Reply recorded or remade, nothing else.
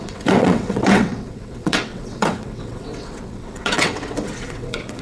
remade